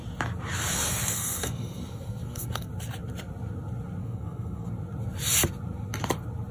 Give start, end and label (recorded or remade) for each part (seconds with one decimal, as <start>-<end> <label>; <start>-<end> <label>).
0.0-0.7 recorded; 0.7-2.7 remade; 2.7-4.0 recorded; 4.0-4.7 remade; 4.7-6.5 recorded